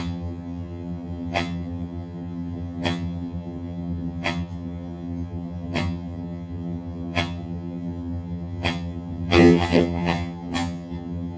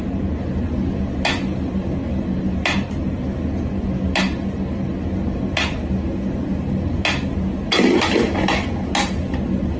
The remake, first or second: first